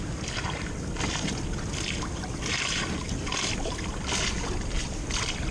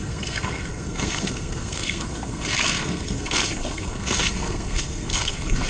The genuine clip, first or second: first